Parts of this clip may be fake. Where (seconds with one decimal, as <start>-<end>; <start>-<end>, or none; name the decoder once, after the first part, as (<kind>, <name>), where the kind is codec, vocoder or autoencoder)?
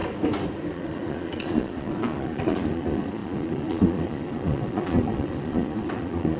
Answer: 0.7-6.4 (vocoder, Vocos)